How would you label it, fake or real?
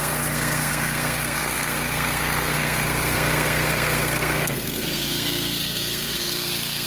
fake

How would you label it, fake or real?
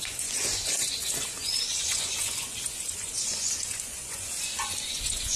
fake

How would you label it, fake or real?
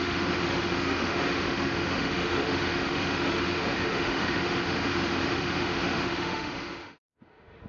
fake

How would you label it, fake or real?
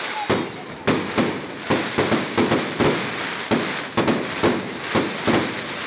real